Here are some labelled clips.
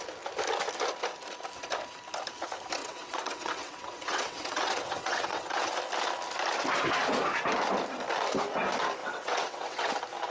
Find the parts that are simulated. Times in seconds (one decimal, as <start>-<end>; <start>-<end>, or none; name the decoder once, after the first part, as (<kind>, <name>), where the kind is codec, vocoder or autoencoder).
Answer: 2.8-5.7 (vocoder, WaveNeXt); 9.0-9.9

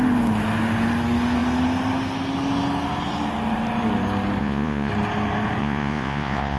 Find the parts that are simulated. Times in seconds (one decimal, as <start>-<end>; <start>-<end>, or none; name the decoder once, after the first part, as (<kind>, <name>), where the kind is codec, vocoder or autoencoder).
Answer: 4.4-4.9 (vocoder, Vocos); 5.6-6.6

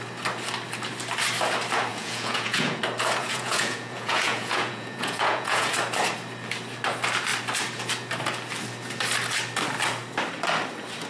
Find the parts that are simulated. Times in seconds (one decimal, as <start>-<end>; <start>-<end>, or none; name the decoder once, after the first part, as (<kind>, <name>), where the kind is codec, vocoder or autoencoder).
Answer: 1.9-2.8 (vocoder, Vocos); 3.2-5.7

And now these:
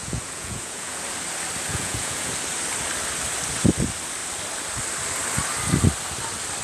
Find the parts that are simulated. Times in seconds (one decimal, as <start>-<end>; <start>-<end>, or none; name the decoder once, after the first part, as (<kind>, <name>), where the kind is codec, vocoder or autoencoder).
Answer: 0.0-1.0 (vocoder, Vocos); 1.7-2.3

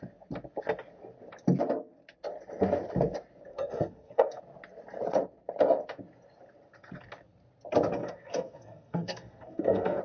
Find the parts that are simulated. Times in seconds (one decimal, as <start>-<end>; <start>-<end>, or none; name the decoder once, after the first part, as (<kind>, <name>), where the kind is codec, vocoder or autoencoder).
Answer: 3.5-4.4 (codec, SNAC); 8.0-10.0

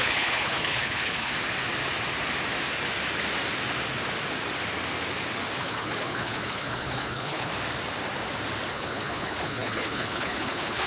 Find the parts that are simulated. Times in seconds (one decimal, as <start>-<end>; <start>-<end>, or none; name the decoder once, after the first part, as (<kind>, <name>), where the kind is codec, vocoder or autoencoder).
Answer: 0.0-1.3 (codec, HILCodec); 5.6-7.5; 8.7-10.9

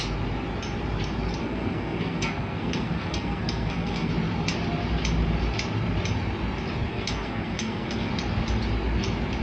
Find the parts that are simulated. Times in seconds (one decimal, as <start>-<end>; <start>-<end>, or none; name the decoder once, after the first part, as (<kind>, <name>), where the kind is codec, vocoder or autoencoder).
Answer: 1.4-4.1 (codec, SNAC); 6.9-8.1